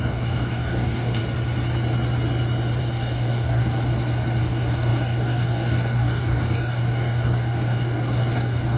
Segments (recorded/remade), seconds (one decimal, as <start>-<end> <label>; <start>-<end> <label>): 0.0-1.2 remade; 1.2-2.8 recorded; 2.8-3.9 remade; 3.9-4.4 recorded; 4.4-8.8 remade